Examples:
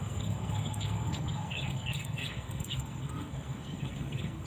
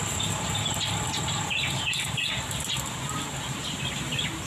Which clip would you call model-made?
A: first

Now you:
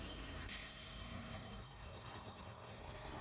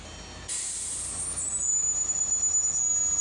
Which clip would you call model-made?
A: first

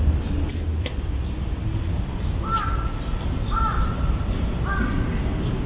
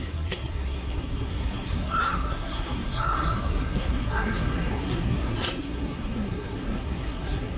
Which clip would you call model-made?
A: second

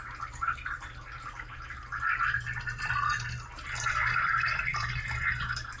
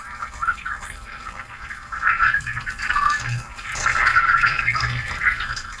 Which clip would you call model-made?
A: second